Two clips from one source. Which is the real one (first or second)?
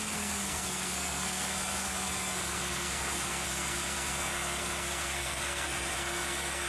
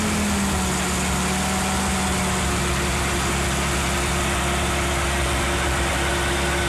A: second